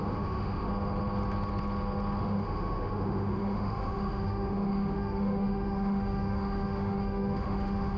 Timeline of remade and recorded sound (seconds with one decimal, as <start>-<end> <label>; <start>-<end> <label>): 0.0-0.7 remade; 0.7-2.2 recorded; 2.2-8.0 remade